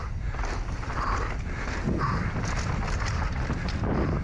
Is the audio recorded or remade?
recorded